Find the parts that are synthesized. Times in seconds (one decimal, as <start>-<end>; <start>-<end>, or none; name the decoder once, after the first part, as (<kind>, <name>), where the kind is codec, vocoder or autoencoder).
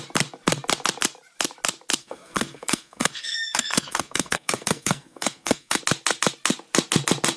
2.0-5.8 (codec, SNAC)